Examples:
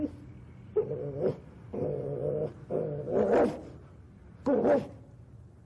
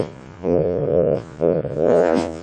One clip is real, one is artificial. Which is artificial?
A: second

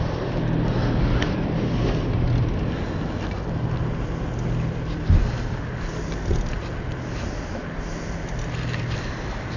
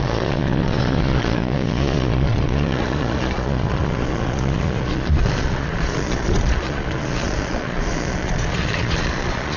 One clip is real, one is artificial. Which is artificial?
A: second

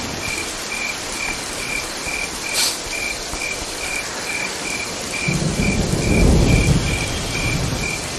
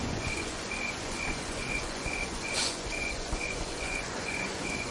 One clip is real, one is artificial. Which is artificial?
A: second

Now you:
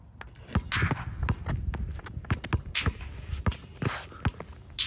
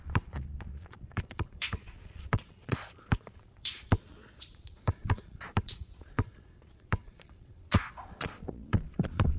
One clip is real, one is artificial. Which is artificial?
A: second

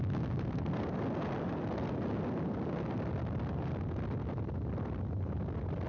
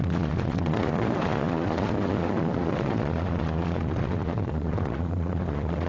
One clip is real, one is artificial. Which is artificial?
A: second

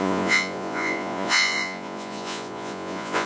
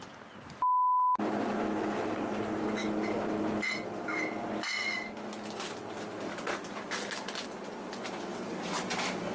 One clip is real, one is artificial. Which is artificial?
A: first